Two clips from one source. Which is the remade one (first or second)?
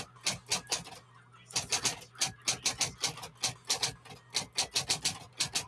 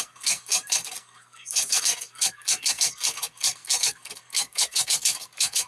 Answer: second